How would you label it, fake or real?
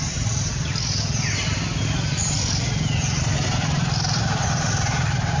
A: fake